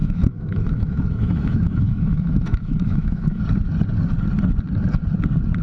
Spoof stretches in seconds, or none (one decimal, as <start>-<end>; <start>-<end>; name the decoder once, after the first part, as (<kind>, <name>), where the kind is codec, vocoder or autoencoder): 0.0-3.4 (autoencoder, DAC-VAE)